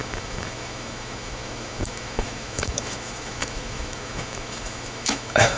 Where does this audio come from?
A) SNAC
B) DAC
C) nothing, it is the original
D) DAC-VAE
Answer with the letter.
D